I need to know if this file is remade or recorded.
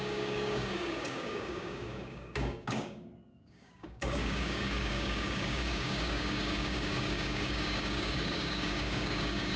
remade